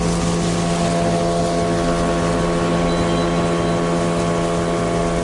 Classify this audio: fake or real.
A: real